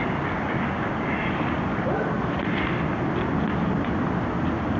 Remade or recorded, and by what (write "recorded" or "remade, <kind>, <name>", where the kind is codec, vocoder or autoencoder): recorded